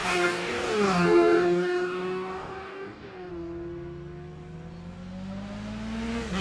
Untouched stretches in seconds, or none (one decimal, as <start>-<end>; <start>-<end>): 3.3-6.4